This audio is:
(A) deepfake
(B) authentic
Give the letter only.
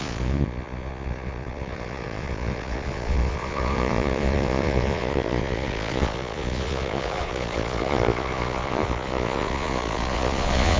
A